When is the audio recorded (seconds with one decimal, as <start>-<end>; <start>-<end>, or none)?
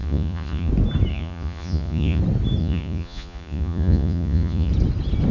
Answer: 0.7-1.1; 2.2-2.6; 4.7-5.3